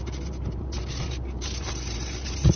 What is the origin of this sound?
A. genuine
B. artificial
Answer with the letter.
A